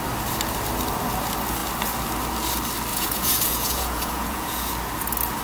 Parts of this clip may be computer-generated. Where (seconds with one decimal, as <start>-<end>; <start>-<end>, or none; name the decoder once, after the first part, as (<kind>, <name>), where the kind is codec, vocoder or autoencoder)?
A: 2.9-4.7 (vocoder, Vocos)